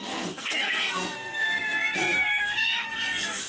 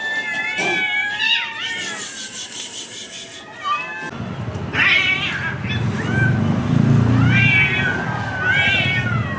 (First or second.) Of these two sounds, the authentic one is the second